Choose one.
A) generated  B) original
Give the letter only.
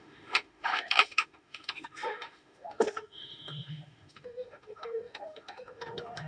A